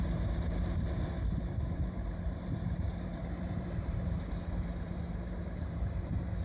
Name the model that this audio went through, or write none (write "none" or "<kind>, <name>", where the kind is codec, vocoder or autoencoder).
vocoder, BigVGAN v2